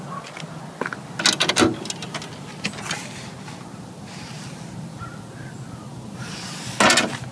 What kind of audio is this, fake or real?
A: real